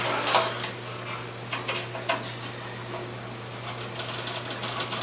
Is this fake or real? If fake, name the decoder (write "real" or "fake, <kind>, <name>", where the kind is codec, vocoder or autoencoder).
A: real